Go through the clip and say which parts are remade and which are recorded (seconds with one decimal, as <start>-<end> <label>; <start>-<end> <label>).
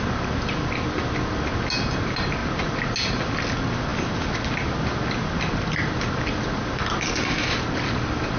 0.0-8.4 recorded